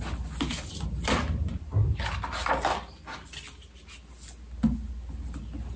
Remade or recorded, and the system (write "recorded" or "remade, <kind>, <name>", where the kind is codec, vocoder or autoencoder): recorded